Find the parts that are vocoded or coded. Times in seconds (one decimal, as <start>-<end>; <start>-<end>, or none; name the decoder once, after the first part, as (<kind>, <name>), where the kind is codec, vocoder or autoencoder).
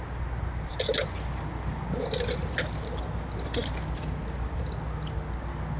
none